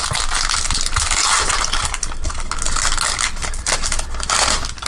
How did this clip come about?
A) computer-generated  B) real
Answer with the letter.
B